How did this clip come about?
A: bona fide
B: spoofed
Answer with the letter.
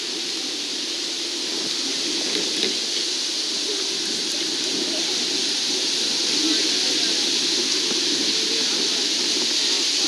A